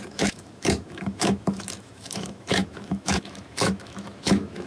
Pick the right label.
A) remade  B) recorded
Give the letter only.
A